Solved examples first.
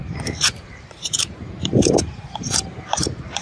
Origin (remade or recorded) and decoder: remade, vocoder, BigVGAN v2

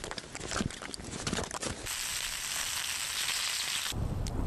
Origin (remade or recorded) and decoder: recorded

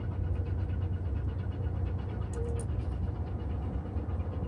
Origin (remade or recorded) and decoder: recorded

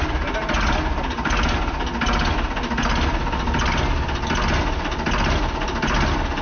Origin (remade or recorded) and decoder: recorded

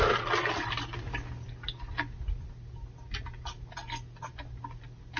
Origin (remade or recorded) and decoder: recorded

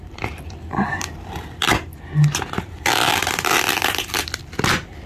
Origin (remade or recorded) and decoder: remade, vocoder, BigVGAN v2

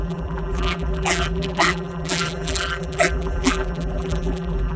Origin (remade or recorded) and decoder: remade, vocoder, BigVGAN v2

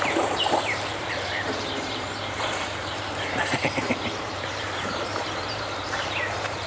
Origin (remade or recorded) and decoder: remade, vocoder, BigVGAN v2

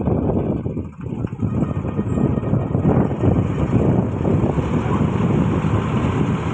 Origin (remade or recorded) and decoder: recorded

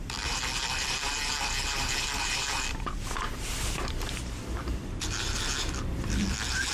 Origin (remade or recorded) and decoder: remade, vocoder, BigVGAN v2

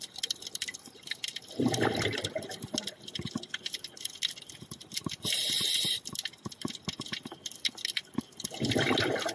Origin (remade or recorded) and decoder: recorded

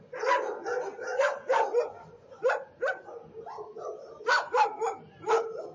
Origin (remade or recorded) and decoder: recorded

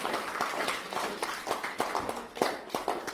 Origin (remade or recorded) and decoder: remade, vocoder, BigVGAN v2